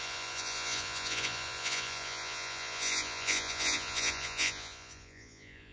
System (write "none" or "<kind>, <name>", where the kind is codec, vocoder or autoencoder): vocoder, Vocos